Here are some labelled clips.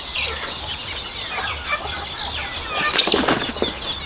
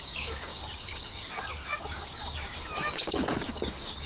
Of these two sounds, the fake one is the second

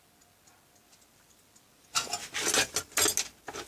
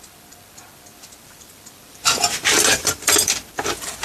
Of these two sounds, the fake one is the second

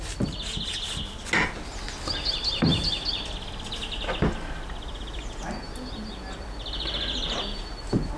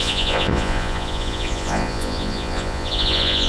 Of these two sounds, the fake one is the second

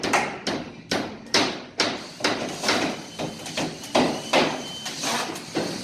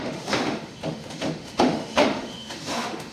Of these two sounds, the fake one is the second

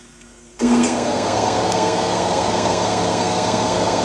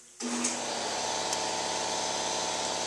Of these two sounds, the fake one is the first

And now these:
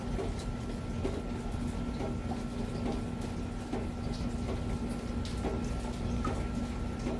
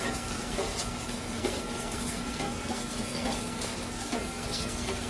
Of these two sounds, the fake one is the second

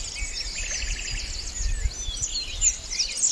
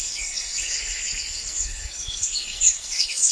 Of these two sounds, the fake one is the second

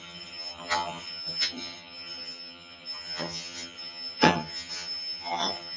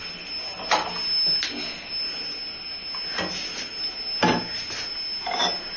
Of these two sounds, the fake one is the first